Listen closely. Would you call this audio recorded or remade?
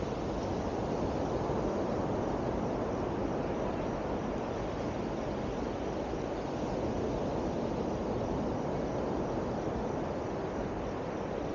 recorded